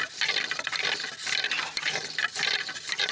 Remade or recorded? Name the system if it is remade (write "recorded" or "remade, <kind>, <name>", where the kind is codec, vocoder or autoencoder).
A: recorded